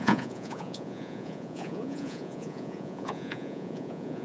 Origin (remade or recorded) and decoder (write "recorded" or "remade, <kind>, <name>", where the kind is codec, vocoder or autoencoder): remade, vocoder, Vocos